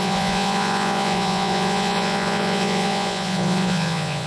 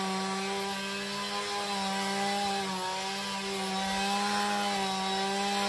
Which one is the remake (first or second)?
first